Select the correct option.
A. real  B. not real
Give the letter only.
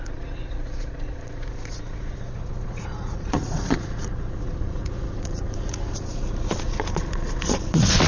B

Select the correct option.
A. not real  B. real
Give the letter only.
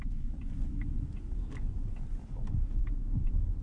B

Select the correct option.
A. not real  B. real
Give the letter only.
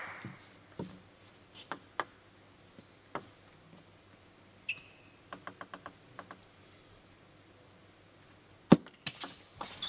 B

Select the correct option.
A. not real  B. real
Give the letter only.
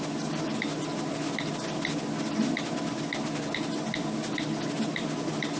B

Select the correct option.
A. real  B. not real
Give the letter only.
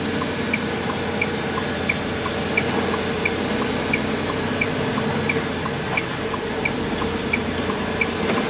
A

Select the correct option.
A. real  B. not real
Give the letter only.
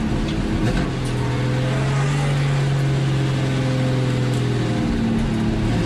A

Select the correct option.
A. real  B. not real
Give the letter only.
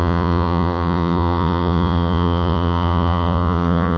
B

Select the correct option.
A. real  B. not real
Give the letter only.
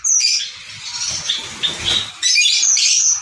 A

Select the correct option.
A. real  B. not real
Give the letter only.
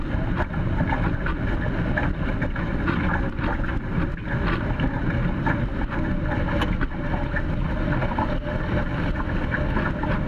A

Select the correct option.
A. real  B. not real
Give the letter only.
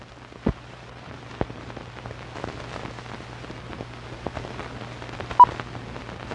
A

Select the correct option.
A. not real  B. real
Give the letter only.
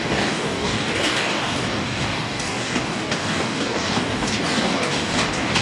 A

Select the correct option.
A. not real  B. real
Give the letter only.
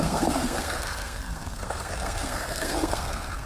A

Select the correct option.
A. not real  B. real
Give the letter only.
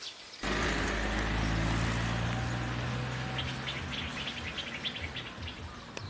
B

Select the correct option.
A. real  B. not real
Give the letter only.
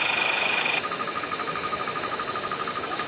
B